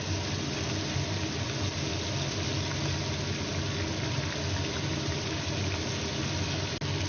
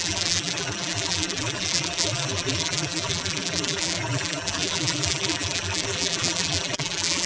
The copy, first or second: second